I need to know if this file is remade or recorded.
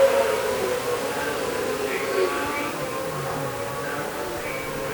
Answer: recorded